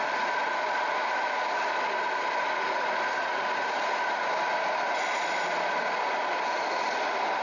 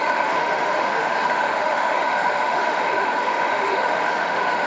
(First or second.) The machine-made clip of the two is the second